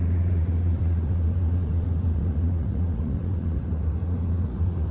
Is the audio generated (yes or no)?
yes